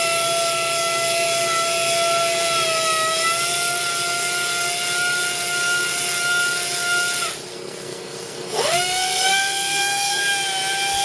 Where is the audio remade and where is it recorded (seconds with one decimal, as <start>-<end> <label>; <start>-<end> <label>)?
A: 0.0-7.5 recorded; 7.5-10.2 remade; 10.2-11.0 recorded